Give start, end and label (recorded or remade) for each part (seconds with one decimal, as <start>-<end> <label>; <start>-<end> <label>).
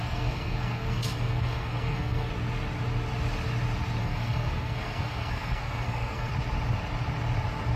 0.0-2.3 remade; 2.3-4.0 recorded; 4.0-6.3 remade; 6.3-7.8 recorded